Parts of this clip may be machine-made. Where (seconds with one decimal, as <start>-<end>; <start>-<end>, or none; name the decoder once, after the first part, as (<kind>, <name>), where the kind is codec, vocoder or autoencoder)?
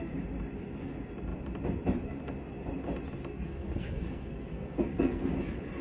3.3-5.3 (codec, SNAC)